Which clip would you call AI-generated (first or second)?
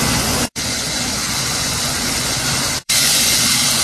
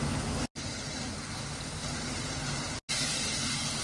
first